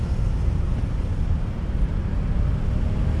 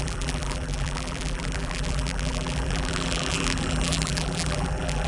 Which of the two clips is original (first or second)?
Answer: first